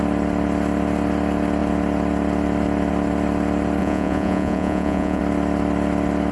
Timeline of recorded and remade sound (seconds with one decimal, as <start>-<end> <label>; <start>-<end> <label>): 0.0-3.8 recorded; 3.8-5.2 remade; 5.2-6.3 recorded